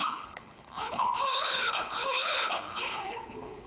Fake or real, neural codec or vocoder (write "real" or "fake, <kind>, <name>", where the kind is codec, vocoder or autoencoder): fake, codec, HILCodec